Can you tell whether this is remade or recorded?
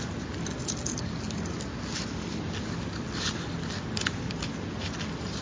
recorded